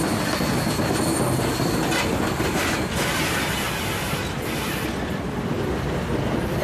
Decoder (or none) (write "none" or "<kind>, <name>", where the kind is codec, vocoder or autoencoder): none